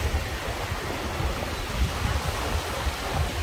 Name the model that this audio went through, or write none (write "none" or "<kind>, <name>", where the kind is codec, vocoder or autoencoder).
none